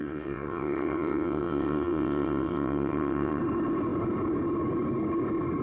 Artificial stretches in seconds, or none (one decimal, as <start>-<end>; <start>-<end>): 0.0-3.4